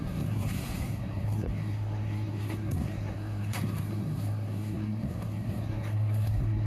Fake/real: fake